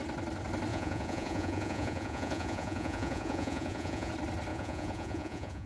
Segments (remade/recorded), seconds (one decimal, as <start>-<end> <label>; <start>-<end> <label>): 0.0-0.7 recorded; 0.7-4.1 remade; 4.1-4.5 recorded; 4.5-5.7 remade